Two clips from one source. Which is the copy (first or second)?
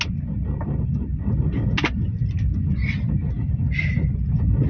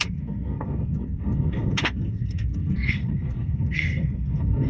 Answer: second